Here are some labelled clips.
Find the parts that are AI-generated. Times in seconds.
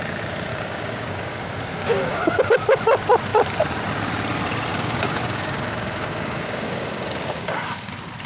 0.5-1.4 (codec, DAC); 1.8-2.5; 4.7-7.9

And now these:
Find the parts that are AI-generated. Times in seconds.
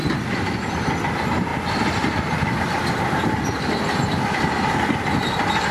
none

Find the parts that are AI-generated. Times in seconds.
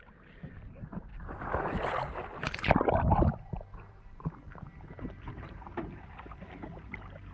0.0-1.1 (vocoder, BigVGAN v2); 3.9-7.3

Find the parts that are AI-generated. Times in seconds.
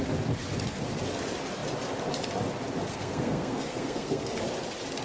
2.9-4.4 (codec, SNAC)